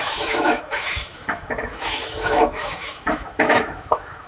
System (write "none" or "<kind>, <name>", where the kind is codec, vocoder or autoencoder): autoencoder, DAC-VAE